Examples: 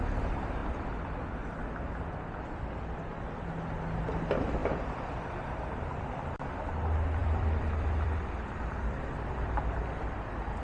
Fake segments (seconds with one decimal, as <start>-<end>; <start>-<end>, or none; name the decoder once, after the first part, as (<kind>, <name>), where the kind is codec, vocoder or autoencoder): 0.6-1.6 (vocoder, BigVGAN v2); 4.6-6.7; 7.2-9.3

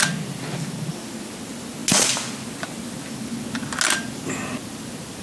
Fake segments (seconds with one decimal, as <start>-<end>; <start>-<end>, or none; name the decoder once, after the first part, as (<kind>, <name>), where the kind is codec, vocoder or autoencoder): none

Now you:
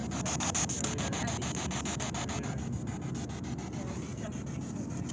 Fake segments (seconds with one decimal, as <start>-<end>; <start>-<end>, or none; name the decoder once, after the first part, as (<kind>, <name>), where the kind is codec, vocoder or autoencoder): none